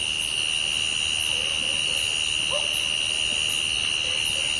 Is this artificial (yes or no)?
no